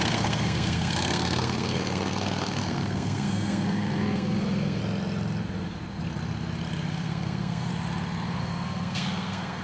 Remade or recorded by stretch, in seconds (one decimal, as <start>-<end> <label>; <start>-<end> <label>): 0.0-4.8 remade; 4.8-6.9 recorded; 6.9-7.7 remade; 7.7-8.4 recorded; 8.4-9.6 remade